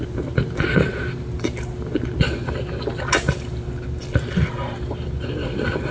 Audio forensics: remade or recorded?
recorded